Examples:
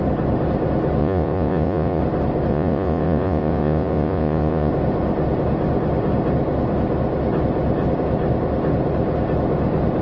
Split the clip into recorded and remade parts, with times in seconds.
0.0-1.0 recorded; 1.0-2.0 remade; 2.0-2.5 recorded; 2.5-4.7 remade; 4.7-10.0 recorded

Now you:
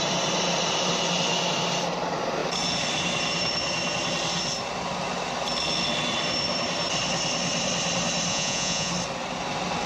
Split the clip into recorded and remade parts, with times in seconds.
0.0-8.3 recorded; 8.3-8.9 remade; 8.9-9.9 recorded